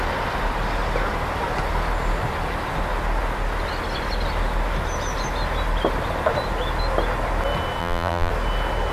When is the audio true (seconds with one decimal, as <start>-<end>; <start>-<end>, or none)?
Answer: 0.0-7.8; 8.3-8.9